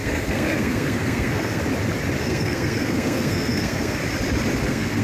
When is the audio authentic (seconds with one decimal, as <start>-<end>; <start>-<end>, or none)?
1.6-2.2; 4.0-4.6